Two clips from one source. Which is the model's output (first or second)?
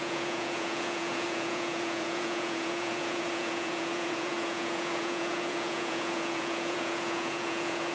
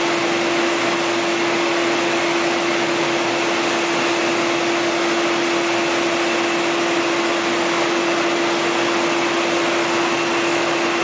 first